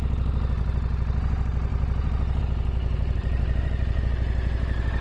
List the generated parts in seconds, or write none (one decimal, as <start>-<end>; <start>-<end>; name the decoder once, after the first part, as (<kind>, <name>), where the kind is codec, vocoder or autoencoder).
2.8-4.1 (vocoder, BigVGAN v2)